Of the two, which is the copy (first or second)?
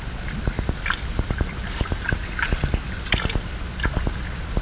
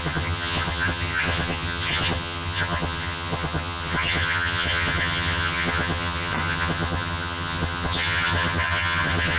second